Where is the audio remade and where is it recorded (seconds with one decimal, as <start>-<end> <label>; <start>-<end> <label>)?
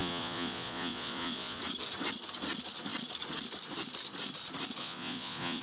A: 0.0-1.6 remade; 1.6-4.8 recorded; 4.8-5.6 remade